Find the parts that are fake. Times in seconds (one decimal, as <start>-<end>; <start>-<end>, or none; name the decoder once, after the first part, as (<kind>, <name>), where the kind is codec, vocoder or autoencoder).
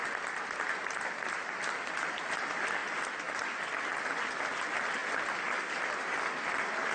none